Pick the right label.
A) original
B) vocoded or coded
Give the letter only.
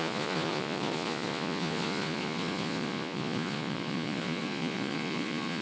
B